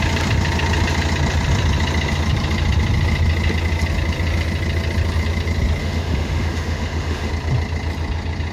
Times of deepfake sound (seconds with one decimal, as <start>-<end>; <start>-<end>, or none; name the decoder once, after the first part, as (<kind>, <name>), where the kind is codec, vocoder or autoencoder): 5.8-7.3 (autoencoder, DAC-VAE)